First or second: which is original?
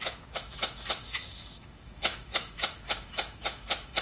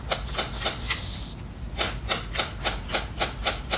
second